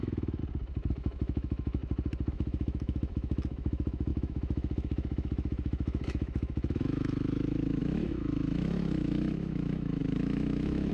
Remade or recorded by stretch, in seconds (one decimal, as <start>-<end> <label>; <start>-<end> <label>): 0.0-0.4 remade; 0.4-0.9 recorded; 0.9-1.8 remade; 1.8-2.3 recorded; 2.3-10.9 remade